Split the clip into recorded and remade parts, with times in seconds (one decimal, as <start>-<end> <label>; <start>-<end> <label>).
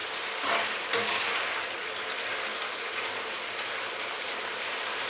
0.0-2.5 recorded; 2.5-5.1 remade